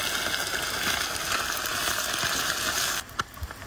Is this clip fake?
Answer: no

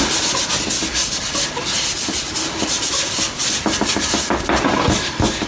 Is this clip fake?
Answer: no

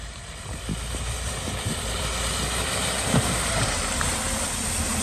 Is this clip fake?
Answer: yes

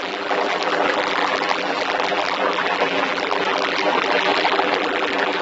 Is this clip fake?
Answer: yes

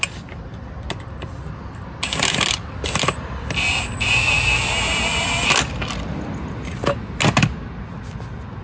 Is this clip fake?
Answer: no